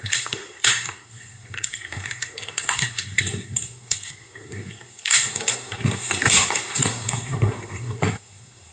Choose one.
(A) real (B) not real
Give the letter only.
B